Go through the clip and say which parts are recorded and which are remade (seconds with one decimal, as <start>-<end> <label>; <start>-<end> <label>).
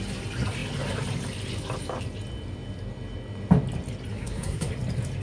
0.0-4.1 recorded; 4.1-4.7 remade; 4.7-5.2 recorded